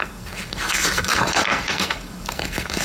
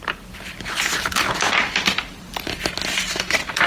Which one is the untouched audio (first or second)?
second